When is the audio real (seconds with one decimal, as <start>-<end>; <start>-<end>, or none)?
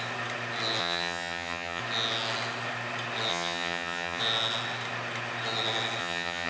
0.0-0.8; 1.8-3.3; 4.2-6.0